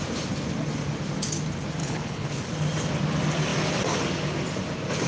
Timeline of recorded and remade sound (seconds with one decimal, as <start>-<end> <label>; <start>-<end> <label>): 0.0-1.8 recorded; 1.8-2.3 remade; 2.3-5.1 recorded